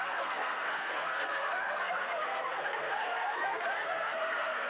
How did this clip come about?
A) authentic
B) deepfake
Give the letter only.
B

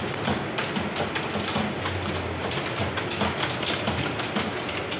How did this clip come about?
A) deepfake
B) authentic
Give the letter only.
B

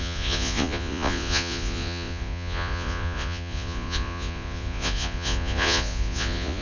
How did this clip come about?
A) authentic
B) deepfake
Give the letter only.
B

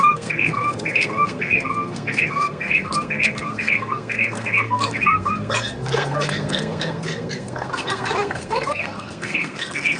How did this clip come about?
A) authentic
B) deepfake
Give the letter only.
B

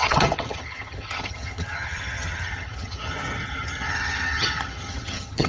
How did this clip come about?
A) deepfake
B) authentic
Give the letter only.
A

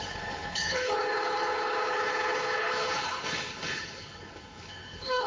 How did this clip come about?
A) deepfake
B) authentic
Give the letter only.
A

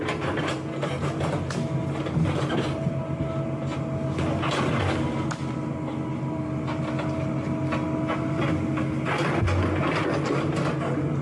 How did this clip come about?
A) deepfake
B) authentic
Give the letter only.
B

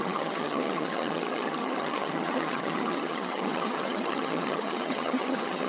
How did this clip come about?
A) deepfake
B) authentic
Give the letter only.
A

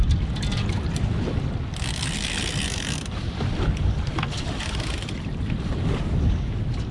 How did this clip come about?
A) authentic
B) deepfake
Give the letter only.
A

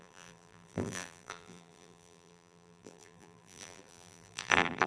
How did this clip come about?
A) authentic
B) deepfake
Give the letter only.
B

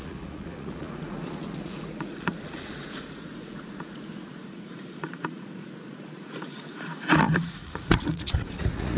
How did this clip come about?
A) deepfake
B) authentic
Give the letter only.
A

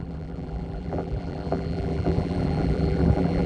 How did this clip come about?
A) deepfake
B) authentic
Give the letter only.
A